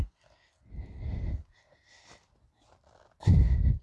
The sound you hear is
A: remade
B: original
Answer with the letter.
B